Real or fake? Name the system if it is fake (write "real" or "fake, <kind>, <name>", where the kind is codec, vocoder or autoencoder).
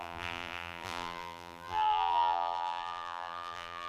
fake, vocoder, BigVGAN v2